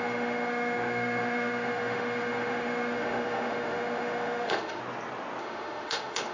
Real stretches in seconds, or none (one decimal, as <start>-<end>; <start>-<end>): 4.8-5.4